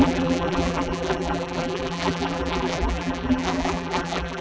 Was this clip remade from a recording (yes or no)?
yes